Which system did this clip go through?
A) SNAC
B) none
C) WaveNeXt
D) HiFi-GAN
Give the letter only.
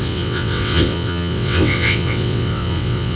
C